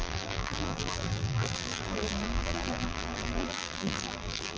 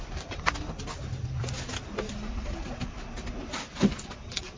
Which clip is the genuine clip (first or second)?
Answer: second